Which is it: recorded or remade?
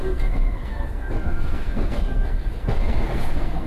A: remade